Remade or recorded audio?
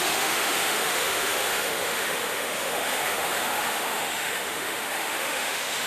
remade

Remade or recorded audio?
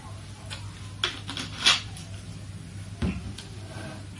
recorded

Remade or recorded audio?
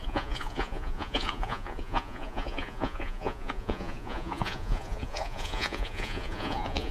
remade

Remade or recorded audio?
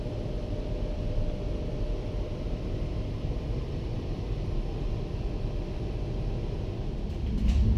recorded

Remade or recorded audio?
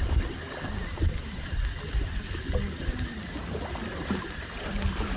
recorded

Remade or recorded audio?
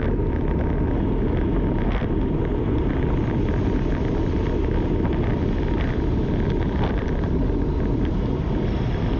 recorded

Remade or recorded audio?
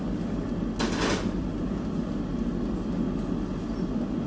recorded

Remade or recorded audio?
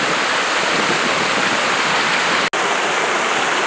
recorded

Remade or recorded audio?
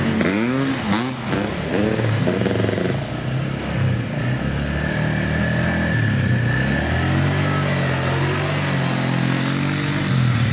recorded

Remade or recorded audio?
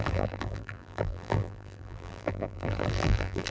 remade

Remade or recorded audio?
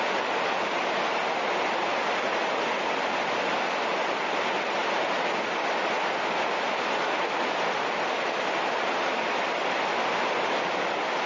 recorded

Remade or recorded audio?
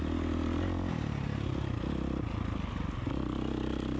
recorded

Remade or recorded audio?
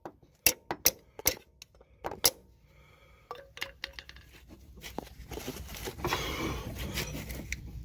recorded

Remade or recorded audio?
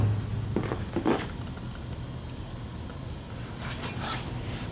recorded